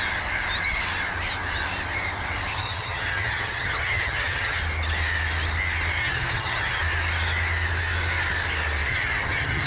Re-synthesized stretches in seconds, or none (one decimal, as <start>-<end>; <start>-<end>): 2.5-4.6; 6.0-6.8; 8.9-9.7